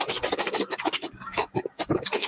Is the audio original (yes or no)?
no